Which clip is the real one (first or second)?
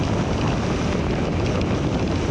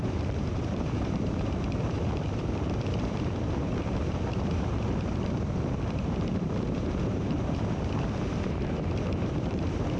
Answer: first